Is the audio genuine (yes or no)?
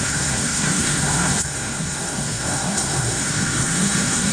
no